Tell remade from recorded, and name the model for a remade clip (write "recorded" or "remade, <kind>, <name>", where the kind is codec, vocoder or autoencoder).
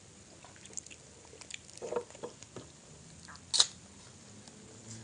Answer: recorded